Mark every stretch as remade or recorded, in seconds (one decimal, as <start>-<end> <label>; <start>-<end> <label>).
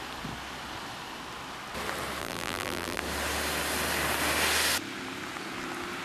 0.0-2.2 recorded; 2.2-3.0 remade; 3.0-6.0 recorded